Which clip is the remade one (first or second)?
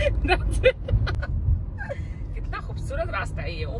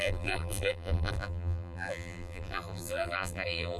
second